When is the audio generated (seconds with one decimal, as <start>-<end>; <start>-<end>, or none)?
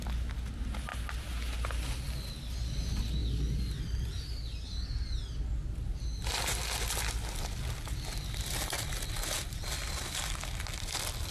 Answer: 3.2-4.2